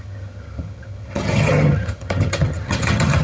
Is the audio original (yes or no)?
no